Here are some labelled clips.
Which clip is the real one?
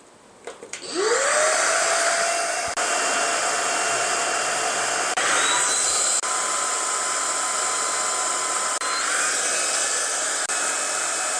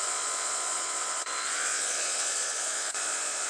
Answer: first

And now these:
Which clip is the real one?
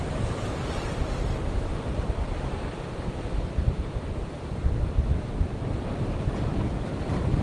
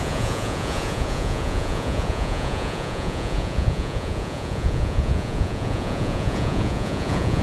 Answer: first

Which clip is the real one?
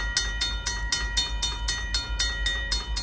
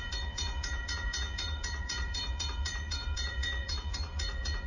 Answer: first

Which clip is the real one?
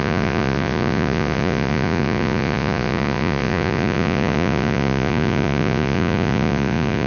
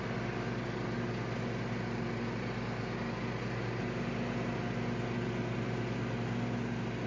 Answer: second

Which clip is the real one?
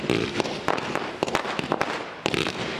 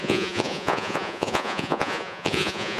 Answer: first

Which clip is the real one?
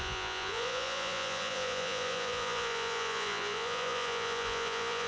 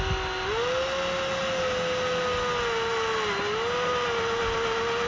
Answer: second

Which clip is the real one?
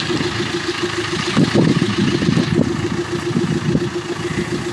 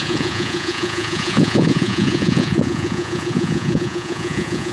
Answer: first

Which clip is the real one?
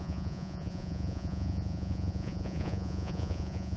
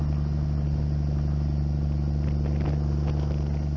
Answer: second